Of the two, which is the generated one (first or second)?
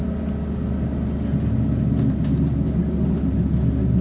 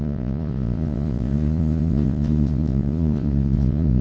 second